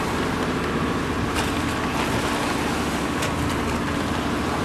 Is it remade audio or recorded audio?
recorded